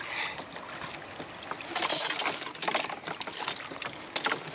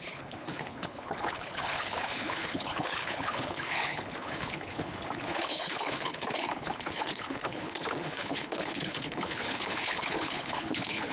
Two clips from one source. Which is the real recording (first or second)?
first